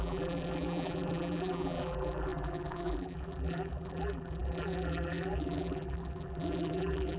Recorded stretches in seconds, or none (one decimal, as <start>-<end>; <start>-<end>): none